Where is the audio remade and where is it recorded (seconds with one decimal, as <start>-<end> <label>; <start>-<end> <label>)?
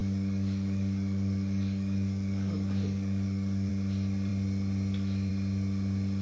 0.0-3.7 remade; 3.7-6.2 recorded